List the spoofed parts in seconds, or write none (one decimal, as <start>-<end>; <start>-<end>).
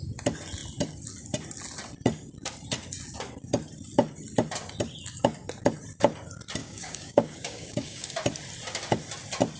6.6-8.1